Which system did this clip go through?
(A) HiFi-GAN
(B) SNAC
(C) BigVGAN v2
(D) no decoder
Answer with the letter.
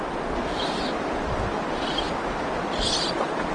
D